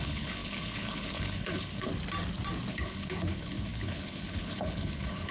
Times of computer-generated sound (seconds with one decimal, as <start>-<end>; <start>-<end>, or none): 0.0-1.9; 2.7-5.3